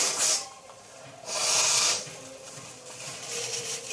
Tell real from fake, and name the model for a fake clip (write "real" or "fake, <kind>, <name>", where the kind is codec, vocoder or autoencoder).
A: real